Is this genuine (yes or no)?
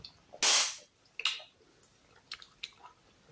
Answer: yes